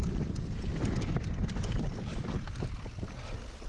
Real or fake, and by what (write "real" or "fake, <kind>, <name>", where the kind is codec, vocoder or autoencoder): real